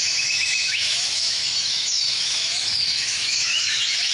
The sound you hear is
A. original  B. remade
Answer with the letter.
B